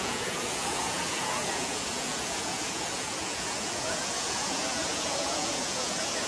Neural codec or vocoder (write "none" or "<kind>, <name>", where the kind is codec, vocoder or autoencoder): vocoder, Vocos